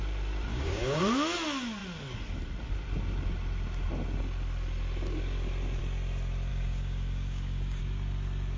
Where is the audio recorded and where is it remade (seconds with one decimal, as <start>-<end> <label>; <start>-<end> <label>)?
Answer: 0.0-0.5 recorded; 0.5-1.0 remade; 1.0-6.5 recorded; 6.5-7.8 remade; 7.8-8.6 recorded